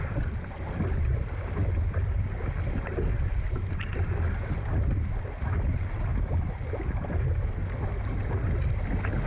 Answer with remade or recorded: recorded